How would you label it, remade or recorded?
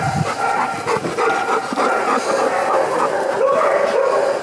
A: recorded